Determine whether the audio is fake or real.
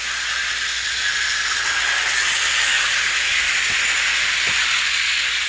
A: real